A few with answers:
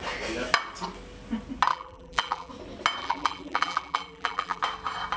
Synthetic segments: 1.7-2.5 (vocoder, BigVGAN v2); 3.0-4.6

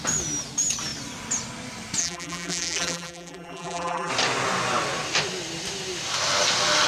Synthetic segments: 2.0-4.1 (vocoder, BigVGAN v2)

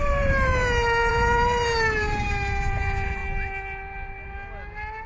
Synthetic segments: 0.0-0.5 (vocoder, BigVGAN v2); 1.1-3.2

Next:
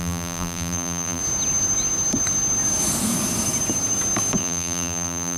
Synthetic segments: 0.0-1.2 (vocoder, BigVGAN v2); 4.4-5.4

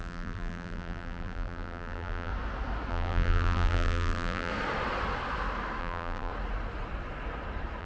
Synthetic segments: 0.0-2.3 (vocoder, BigVGAN v2); 2.9-4.5; 5.8-6.3